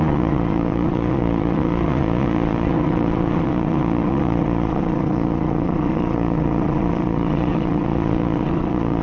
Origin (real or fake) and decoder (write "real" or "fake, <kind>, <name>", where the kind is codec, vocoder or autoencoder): fake, vocoder, Vocos